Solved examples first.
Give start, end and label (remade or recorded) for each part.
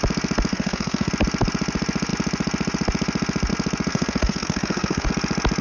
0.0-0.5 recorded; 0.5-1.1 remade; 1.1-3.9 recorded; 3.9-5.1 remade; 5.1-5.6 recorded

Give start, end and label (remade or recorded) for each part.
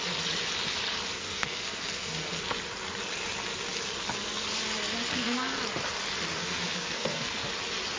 0.0-1.2 recorded; 1.2-2.4 remade; 2.4-5.1 recorded; 5.1-5.6 remade; 5.6-6.4 recorded; 6.4-7.5 remade; 7.5-8.0 recorded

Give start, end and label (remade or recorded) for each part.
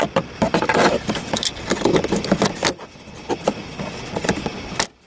0.0-5.1 recorded